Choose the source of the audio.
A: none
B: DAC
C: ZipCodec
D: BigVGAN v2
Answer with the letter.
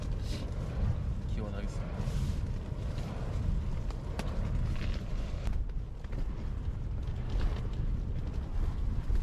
A